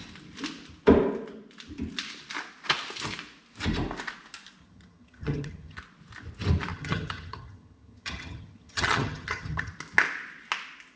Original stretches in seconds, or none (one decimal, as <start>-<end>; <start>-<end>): 0.0-4.6; 5.8-6.7; 9.7-11.0